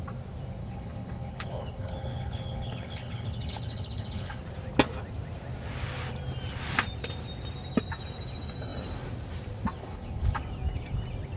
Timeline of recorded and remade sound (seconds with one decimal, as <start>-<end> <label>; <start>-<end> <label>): 0.0-0.6 recorded; 0.6-4.4 remade; 4.4-9.8 recorded; 9.8-10.4 remade; 10.4-11.4 recorded